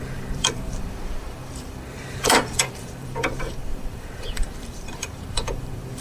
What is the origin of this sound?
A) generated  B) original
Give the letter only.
A